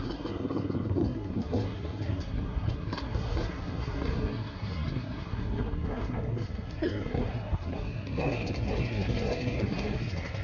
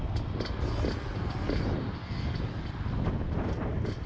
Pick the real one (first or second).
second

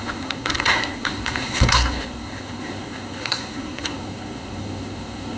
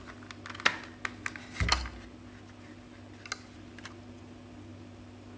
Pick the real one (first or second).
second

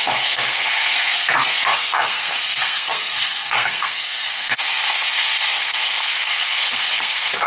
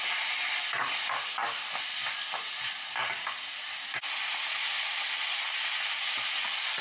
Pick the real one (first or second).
second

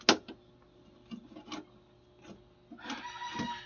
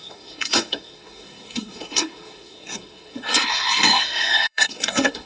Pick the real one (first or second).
first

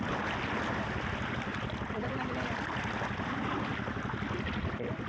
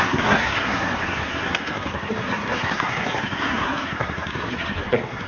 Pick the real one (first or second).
first